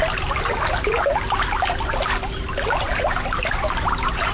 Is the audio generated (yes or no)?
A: no